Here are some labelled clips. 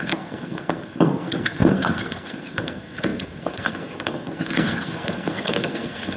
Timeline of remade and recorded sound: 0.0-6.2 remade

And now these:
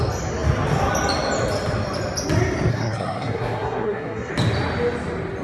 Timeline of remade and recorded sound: 0.0-2.7 recorded; 2.7-4.3 remade; 4.3-5.4 recorded

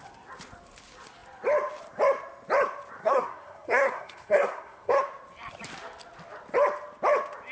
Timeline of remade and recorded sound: 0.0-3.0 recorded; 3.0-5.0 remade; 5.0-7.5 recorded

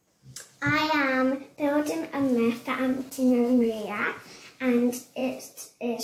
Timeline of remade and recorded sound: 0.0-3.1 recorded; 3.1-3.8 remade; 3.8-6.0 recorded

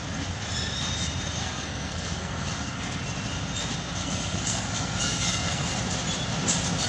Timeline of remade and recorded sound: 0.0-1.4 recorded; 1.4-3.0 remade; 3.0-4.0 recorded; 4.0-5.7 remade; 5.7-6.9 recorded

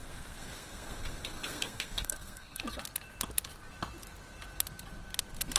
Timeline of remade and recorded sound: 0.0-2.6 remade; 2.6-5.6 recorded